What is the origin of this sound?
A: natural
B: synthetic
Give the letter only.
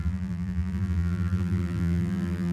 B